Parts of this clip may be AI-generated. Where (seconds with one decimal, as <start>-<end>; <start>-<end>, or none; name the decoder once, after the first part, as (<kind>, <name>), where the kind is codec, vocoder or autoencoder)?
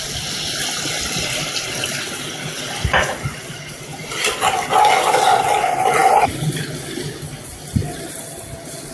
none